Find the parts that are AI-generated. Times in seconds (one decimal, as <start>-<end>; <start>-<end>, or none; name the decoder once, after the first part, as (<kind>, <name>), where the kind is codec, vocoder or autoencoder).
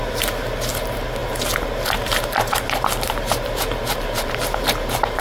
0.7-5.2 (vocoder, BigVGAN v2)